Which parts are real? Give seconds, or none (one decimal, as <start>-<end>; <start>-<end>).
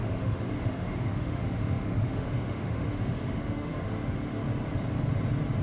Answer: 4.4-5.6